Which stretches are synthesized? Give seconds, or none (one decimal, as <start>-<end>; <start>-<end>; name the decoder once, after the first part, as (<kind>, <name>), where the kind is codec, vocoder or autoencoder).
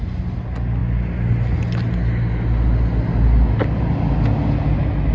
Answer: none